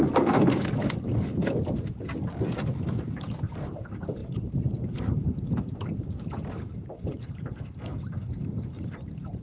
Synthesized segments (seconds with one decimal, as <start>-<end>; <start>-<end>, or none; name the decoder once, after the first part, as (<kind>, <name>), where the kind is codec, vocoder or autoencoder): 0.0-1.3 (vocoder, BigVGAN v2); 2.7-9.4